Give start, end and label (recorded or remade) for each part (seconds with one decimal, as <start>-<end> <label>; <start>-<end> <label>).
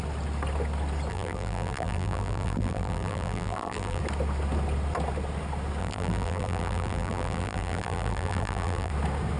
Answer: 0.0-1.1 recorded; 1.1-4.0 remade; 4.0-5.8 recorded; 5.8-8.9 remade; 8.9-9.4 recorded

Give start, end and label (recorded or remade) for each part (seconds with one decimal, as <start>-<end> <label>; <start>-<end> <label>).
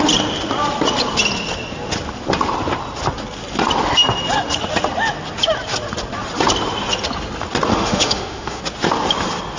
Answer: 0.0-7.7 recorded; 7.7-8.6 remade; 8.6-9.6 recorded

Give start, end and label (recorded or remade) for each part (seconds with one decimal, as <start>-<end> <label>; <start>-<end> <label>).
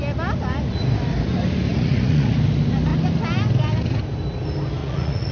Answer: 0.0-1.7 recorded; 1.7-2.3 remade; 2.3-4.8 recorded; 4.8-5.3 remade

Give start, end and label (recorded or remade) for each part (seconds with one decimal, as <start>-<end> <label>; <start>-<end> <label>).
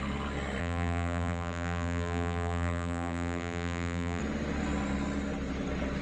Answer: 0.0-0.6 recorded; 0.6-4.2 remade; 4.2-6.0 recorded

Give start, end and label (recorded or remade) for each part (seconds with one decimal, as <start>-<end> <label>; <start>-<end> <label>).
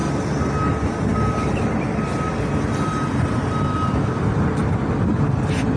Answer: 0.0-5.8 recorded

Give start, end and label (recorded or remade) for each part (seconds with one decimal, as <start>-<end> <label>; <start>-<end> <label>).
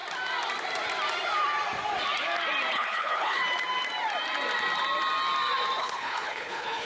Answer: 0.0-2.7 recorded; 2.7-3.4 remade; 3.4-5.8 recorded; 5.8-6.9 remade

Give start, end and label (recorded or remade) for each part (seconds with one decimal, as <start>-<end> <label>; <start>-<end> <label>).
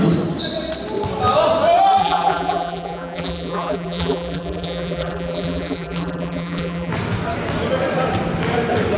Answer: 0.0-2.0 recorded; 2.0-6.9 remade; 6.9-9.0 recorded